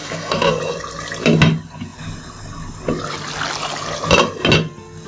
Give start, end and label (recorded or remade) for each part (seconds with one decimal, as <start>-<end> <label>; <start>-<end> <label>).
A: 0.0-0.6 remade; 0.6-5.1 recorded